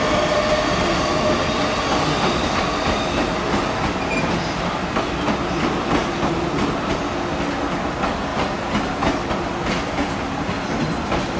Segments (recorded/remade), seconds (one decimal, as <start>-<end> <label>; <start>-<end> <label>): 0.0-11.4 recorded